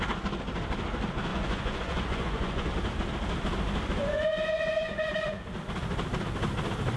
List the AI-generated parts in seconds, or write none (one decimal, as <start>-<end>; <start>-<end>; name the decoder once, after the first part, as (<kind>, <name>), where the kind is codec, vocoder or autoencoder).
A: 1.3-2.7 (vocoder, Vocos); 4.0-5.4